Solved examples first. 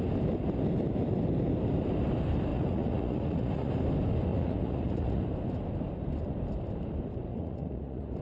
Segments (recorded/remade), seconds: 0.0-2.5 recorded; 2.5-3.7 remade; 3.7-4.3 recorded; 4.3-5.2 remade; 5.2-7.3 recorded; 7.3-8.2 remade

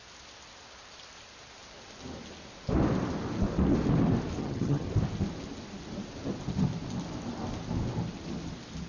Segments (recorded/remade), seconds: 0.0-4.4 recorded; 4.4-4.9 remade; 4.9-8.9 recorded

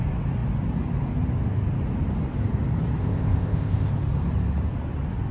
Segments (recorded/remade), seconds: 0.0-3.0 recorded; 3.0-3.9 remade; 3.9-5.3 recorded

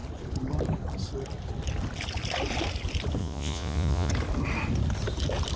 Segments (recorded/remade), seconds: 0.0-3.2 recorded; 3.2-4.1 remade; 4.1-5.6 recorded

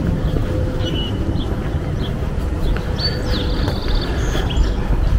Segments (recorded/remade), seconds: 0.0-5.2 recorded

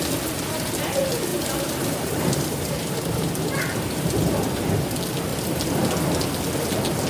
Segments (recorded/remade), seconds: 0.0-1.3 recorded; 1.3-3.3 remade; 3.3-7.1 recorded

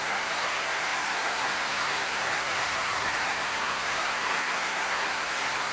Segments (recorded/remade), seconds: 0.0-5.7 remade

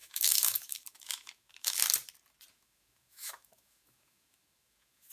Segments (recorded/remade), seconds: 0.0-1.8 remade; 1.8-2.5 recorded; 2.5-5.1 remade